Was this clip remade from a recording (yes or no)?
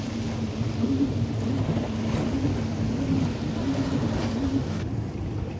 no